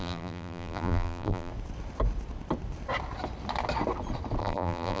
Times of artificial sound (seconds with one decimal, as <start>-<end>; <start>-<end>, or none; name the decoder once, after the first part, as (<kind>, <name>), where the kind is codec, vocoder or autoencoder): 0.0-1.5 (vocoder, BigVGAN v2); 4.4-5.0

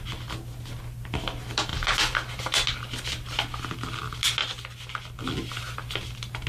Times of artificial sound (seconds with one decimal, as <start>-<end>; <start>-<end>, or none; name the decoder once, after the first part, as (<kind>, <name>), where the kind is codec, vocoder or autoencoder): none

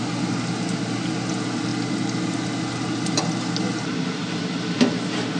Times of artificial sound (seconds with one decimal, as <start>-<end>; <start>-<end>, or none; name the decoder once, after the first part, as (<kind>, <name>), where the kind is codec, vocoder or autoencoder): none

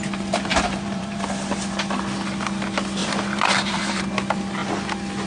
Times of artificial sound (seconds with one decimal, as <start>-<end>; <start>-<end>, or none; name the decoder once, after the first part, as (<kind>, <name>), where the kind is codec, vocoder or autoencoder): 0.5-1.2 (vocoder, BigVGAN v2); 3.0-4.1

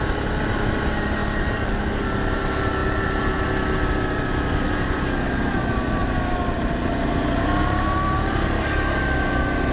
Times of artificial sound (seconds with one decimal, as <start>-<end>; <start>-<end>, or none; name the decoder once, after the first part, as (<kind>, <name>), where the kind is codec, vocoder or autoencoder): 1.2-1.7 (vocoder, BigVGAN v2); 2.8-3.5; 6.0-7.6